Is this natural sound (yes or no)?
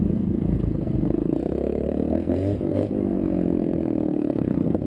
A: no